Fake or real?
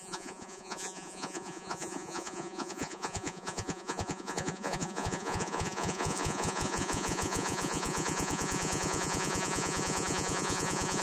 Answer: fake